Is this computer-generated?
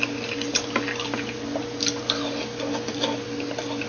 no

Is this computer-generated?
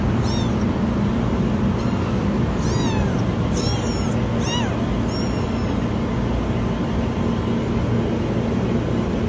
no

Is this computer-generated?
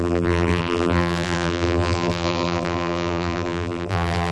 yes